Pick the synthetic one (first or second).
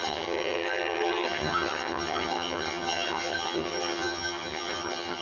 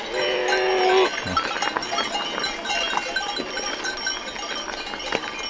first